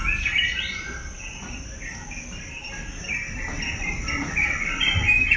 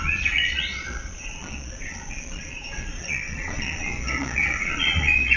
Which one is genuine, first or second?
first